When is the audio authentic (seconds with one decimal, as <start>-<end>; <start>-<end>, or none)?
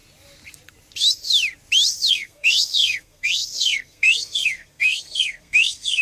0.0-2.1